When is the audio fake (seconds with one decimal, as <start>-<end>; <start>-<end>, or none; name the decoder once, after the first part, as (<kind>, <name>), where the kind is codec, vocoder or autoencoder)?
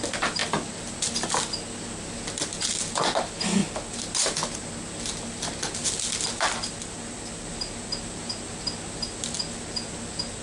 none